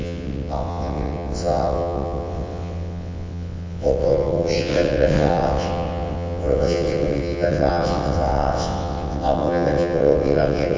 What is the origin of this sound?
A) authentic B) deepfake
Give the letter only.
B